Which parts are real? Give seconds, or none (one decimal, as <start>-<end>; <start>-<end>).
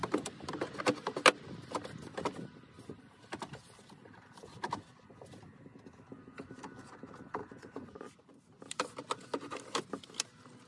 0.0-7.4; 8.1-10.7